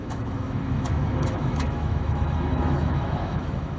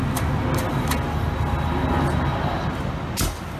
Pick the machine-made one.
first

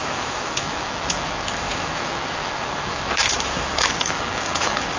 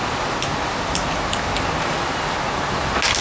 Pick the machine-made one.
first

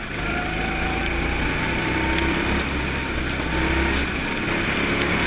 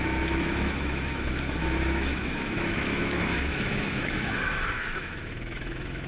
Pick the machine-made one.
second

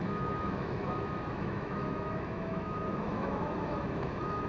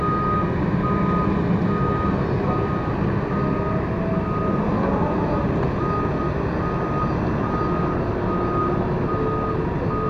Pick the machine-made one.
first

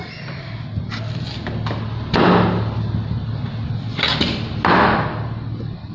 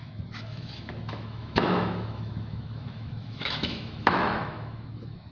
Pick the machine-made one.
second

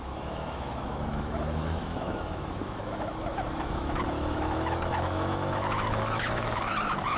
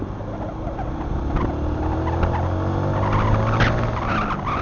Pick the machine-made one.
first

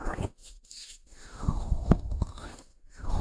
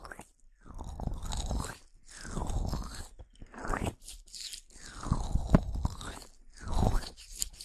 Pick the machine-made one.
first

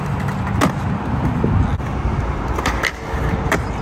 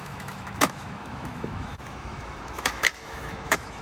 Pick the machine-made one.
second